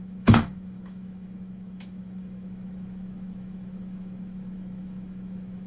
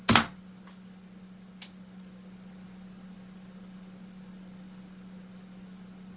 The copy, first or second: first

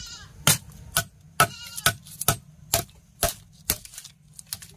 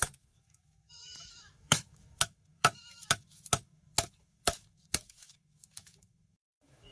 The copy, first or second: second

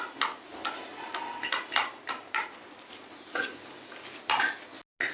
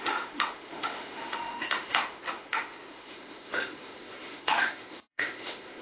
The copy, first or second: second